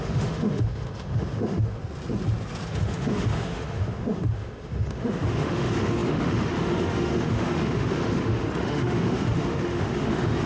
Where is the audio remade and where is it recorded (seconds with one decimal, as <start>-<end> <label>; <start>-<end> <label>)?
0.0-1.8 remade; 1.8-2.7 recorded; 2.7-10.5 remade